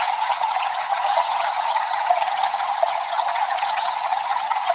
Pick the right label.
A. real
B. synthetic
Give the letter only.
B